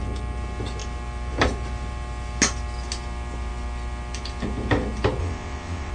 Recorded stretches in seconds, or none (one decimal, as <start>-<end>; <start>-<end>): 0.0-5.2